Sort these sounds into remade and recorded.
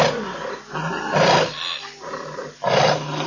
recorded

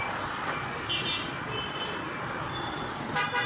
recorded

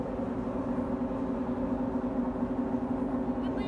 recorded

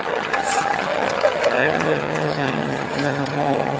remade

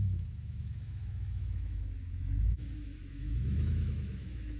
remade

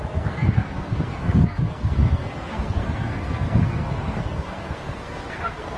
remade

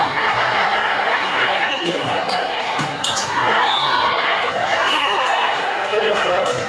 remade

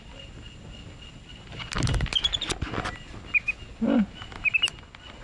recorded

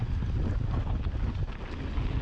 recorded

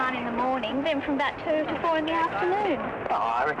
recorded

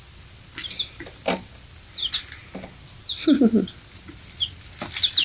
recorded